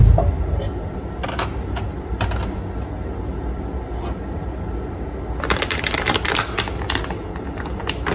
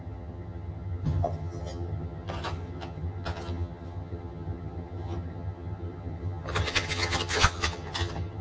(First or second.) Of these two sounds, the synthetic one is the second